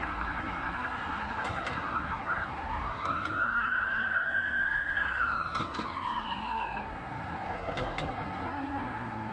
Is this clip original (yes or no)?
no